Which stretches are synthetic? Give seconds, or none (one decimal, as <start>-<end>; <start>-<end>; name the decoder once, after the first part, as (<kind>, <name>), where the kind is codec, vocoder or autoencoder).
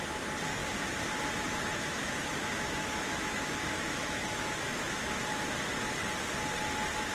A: 2.0-5.2 (autoencoder, DAC-VAE)